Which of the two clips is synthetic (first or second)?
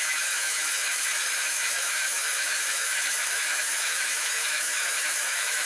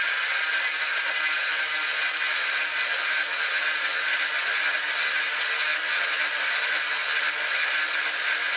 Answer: first